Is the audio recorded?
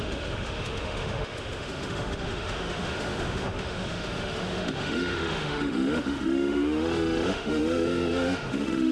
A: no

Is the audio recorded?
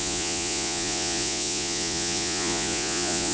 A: no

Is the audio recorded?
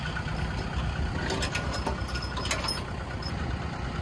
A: yes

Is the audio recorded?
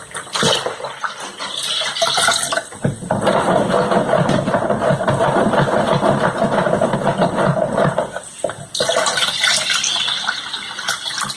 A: yes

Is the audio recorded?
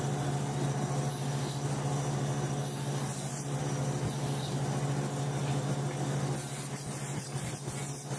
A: yes